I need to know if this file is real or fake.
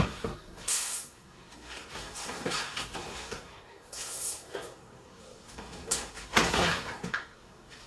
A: fake